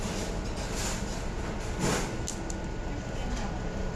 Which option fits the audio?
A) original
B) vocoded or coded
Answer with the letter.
A